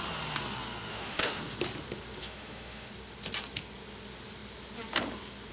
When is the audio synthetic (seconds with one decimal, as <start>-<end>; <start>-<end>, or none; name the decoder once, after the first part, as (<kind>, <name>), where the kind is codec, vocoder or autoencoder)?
0.9-1.4 (autoencoder, DAC-VAE); 2.2-2.9